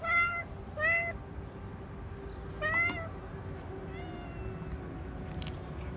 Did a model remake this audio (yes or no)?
no